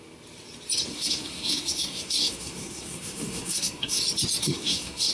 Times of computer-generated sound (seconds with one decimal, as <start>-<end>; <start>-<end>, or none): 0.9-4.0; 4.4-5.1